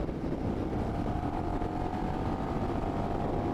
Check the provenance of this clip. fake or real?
real